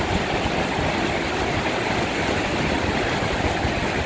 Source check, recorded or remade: recorded